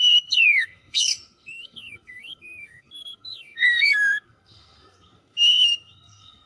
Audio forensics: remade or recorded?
remade